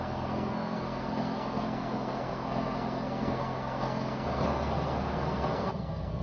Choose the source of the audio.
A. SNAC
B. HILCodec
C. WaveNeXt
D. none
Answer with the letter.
A